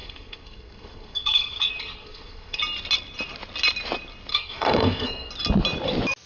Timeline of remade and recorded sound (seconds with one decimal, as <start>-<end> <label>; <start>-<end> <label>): 0.0-2.6 remade; 2.6-4.3 recorded; 4.3-5.3 remade; 5.3-6.3 recorded